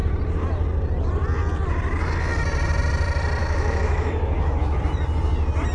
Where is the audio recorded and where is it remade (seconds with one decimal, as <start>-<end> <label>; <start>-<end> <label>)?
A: 0.0-3.4 recorded; 3.4-4.8 remade; 4.8-5.7 recorded